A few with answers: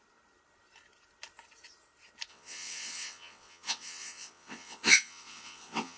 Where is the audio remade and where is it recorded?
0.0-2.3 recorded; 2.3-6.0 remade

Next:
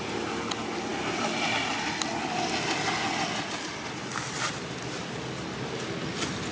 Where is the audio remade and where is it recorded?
0.0-6.5 recorded